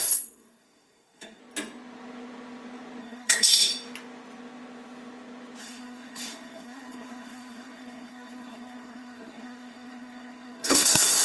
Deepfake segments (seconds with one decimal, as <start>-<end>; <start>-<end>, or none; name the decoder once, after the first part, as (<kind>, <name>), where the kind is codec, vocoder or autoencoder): 0.0-1.4 (codec, SNAC); 3.0-3.7; 5.6-11.2